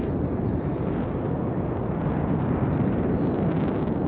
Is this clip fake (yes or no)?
yes